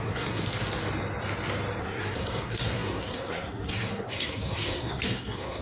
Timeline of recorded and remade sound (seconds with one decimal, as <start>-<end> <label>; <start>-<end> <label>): 0.0-0.4 remade; 0.4-1.8 recorded; 1.8-5.6 remade